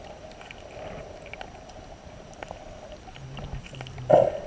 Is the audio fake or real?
real